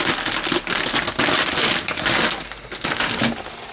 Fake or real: real